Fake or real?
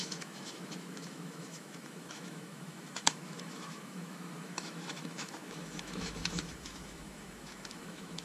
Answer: fake